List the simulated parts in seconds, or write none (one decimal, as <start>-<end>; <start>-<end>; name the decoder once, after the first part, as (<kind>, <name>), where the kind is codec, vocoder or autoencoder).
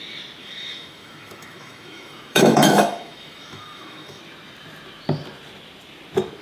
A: 0.4-4.2 (autoencoder, DAC-VAE)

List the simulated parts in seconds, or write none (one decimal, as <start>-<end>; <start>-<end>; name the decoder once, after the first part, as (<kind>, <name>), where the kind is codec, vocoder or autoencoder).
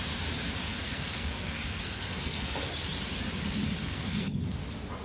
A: 0.7-2.7 (codec, SNAC); 3.8-4.4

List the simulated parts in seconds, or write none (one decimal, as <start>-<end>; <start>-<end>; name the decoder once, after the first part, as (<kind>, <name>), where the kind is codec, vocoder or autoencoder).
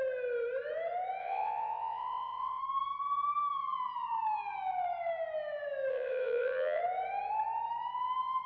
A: 1.2-2.6 (vocoder, WaveNeXt); 5.9-6.8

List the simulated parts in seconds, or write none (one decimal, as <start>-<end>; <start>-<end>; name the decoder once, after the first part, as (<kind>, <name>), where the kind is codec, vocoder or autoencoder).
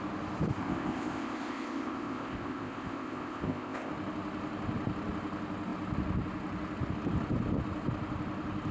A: 0.6-3.9 (codec, ZipCodec)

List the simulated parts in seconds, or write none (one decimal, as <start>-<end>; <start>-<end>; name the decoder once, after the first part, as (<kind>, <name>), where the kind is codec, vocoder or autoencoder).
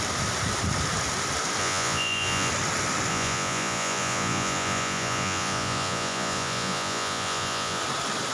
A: 1.6-2.5 (vocoder, Vocos); 3.1-7.8